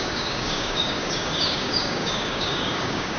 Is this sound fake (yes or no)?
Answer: yes